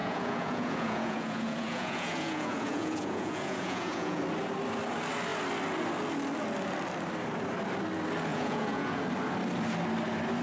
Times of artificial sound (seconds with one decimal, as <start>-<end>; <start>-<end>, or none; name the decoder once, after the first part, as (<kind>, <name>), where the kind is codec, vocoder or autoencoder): 0.0-4.2 (vocoder, Vocos); 8.3-9.0